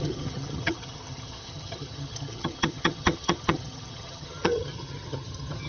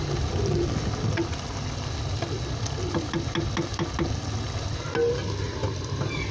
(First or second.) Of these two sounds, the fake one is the first